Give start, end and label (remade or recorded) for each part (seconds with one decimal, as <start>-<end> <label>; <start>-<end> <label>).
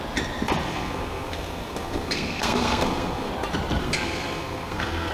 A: 0.0-0.7 recorded; 0.7-3.3 remade; 3.3-3.8 recorded; 3.8-5.1 remade